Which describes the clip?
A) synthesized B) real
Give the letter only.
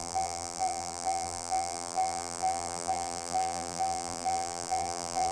A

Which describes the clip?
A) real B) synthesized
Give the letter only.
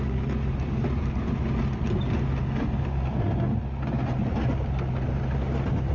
A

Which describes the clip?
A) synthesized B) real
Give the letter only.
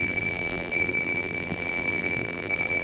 A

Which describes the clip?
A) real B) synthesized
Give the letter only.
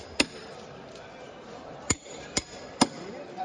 B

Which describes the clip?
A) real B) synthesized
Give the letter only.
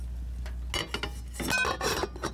A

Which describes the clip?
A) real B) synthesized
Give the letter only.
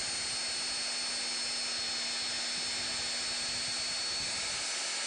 A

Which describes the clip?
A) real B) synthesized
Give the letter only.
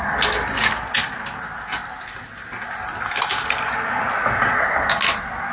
A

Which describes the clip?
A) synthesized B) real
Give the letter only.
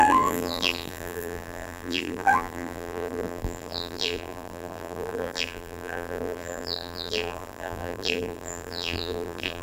A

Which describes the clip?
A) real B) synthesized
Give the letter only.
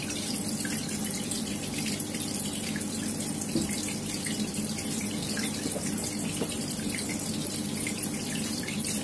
B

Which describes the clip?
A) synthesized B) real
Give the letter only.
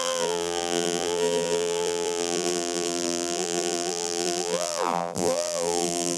A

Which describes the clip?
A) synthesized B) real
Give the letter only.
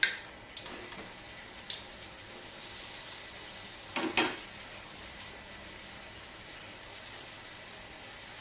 B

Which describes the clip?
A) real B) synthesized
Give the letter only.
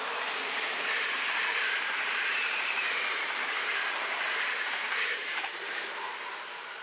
B